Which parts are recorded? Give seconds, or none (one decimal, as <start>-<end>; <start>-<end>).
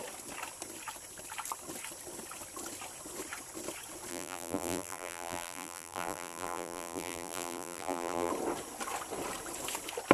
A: 0.0-4.1; 8.3-10.1